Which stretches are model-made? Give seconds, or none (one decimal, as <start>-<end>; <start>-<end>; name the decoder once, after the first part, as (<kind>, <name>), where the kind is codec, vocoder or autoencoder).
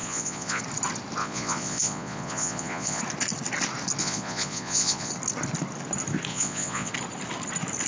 0.0-0.6 (vocoder, Vocos); 1.2-3.0; 4.0-5.1; 6.3-6.9